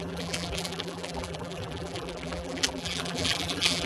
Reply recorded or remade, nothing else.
remade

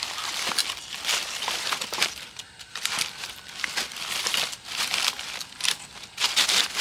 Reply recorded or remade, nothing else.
recorded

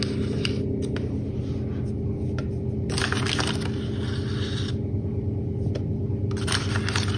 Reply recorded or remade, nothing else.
recorded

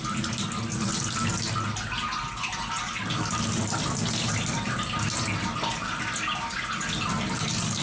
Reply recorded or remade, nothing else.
recorded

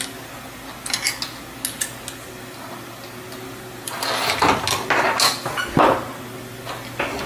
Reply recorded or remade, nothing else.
recorded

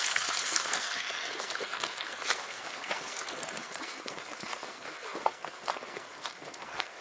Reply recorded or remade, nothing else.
remade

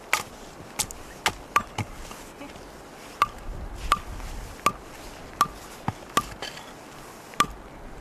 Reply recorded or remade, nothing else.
recorded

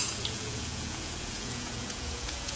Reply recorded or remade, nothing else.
remade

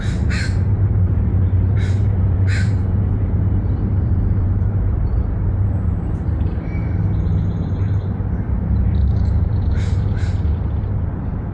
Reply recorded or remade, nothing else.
remade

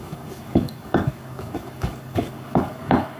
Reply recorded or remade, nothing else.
remade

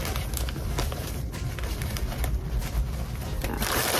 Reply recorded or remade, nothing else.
remade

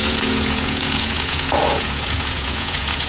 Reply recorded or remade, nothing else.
remade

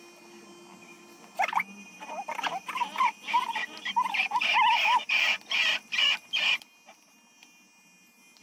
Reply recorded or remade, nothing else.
recorded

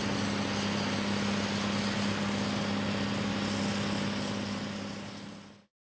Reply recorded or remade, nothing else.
recorded